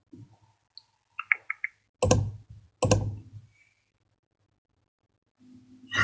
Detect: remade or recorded recorded